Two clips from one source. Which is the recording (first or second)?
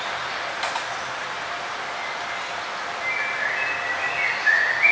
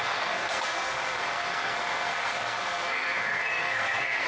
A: first